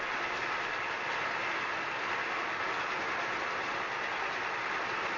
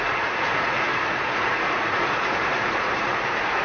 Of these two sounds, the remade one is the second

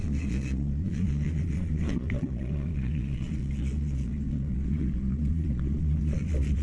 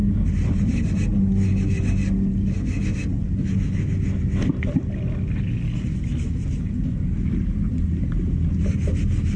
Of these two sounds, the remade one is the first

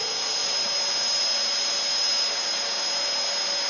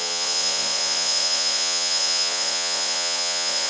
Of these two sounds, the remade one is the second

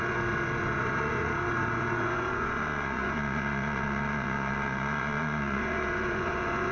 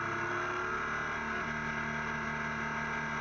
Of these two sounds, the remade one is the first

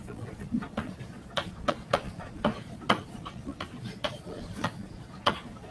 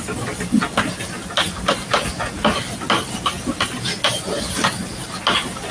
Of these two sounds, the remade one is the first